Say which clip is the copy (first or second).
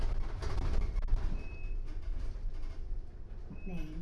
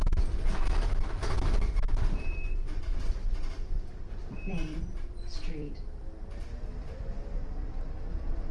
second